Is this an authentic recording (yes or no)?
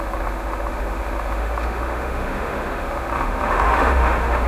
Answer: no